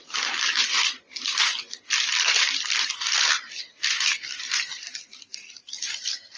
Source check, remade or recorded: remade